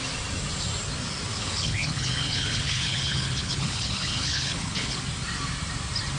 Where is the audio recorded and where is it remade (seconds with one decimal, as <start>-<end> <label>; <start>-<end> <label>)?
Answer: 0.0-1.3 recorded; 1.3-5.0 remade; 5.0-6.2 recorded